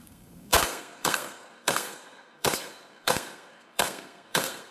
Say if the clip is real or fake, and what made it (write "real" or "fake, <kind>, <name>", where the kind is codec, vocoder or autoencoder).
fake, codec, SNAC